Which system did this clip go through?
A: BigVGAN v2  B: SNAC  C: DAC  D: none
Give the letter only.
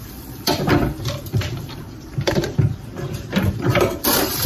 A